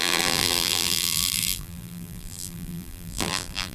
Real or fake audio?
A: fake